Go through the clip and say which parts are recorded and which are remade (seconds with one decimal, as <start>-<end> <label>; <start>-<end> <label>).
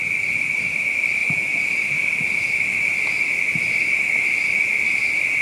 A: 0.0-5.4 recorded